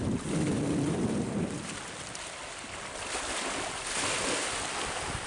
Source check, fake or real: real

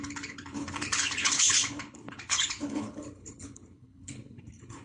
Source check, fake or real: fake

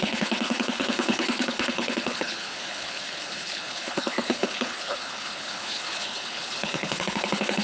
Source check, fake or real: fake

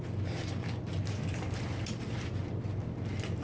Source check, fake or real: real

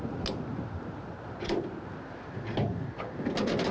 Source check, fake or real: real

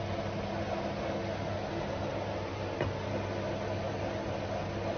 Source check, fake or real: real